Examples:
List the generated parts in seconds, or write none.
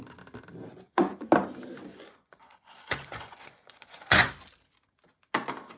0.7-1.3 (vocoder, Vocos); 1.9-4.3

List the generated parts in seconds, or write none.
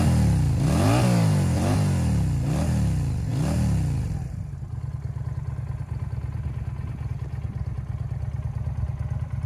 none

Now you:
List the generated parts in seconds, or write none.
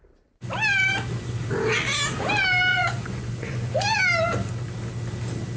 2.7-3.7 (vocoder, Vocos)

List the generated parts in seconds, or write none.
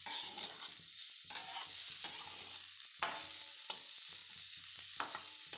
none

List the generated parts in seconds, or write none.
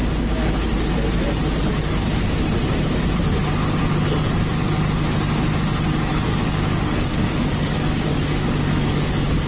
6.1-9.1 (codec, DAC)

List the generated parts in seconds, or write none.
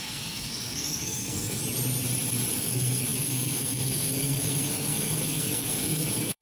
0.0-1.6 (codec, SNAC); 2.5-6.4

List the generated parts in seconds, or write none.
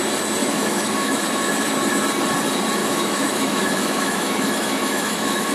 0.4-1.2 (autoencoder, DAC-VAE); 2.8-5.5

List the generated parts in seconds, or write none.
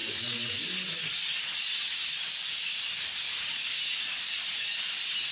none